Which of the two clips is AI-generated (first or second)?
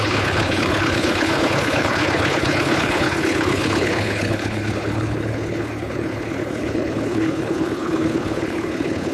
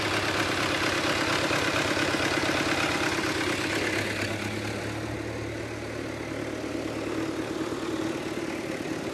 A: first